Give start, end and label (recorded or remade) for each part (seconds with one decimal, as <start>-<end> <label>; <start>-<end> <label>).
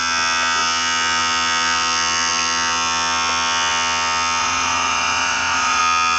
0.0-4.4 recorded; 4.4-5.8 remade; 5.8-6.2 recorded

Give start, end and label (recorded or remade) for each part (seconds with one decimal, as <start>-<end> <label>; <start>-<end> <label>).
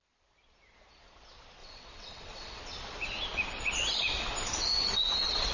0.0-1.6 recorded; 1.6-2.6 remade; 2.6-5.5 recorded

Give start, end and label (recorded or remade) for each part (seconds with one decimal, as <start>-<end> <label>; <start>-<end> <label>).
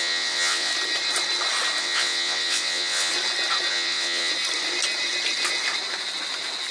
0.0-0.7 remade; 0.7-1.8 recorded; 1.8-3.1 remade; 3.1-3.7 recorded; 3.7-4.3 remade; 4.3-6.7 recorded